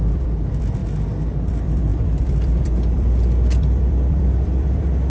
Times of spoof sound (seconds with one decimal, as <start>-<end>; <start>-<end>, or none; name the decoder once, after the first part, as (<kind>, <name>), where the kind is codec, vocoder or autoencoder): 0.0-0.8 (vocoder, BigVGAN v2); 1.4-5.1